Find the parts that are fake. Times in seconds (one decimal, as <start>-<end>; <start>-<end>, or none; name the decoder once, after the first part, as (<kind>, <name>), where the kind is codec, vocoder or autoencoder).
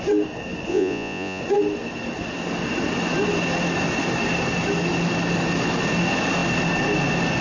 0.7-1.4 (vocoder, Vocos)